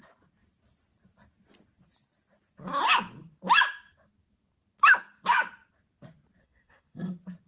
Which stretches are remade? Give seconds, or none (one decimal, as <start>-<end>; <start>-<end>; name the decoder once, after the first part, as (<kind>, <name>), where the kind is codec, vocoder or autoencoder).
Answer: 6.4-7.1 (codec, SNAC)